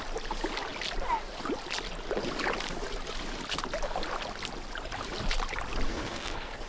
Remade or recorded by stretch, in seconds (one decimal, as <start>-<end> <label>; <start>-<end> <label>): 0.0-5.9 recorded; 5.9-6.7 remade